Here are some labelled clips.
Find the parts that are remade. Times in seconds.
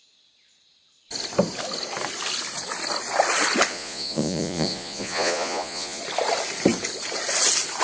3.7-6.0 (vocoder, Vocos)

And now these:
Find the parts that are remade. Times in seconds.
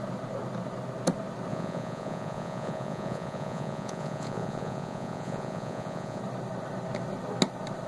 1.5-6.2 (vocoder, Vocos)